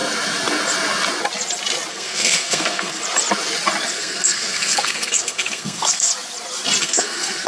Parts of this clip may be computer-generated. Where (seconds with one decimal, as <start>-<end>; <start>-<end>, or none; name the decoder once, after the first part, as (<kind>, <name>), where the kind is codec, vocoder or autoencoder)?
1.9-3.0 (codec, SNAC); 3.9-6.1; 6.8-7.5